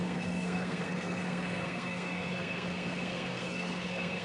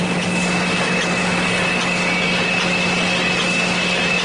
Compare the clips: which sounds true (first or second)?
second